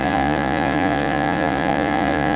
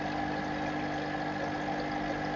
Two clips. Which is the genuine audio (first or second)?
second